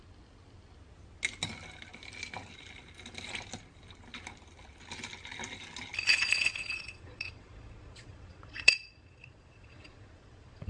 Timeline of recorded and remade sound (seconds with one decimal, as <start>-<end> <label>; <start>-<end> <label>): 0.0-6.1 recorded; 6.1-10.7 remade